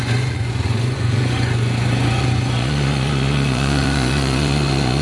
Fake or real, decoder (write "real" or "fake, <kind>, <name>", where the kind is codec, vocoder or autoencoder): fake, vocoder, Vocos